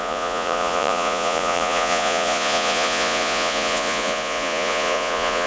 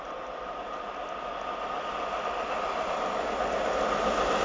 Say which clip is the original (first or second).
second